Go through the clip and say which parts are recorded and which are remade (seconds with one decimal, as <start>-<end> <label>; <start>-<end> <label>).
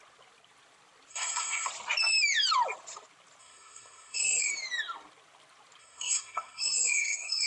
0.0-1.1 recorded; 1.1-1.7 remade; 1.7-3.4 recorded; 3.4-4.5 remade; 4.5-5.8 recorded; 5.8-7.5 remade